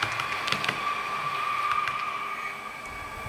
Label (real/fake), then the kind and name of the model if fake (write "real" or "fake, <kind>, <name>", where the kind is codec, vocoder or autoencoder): real